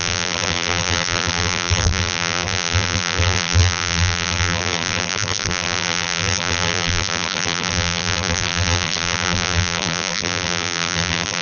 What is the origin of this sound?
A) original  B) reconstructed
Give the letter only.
B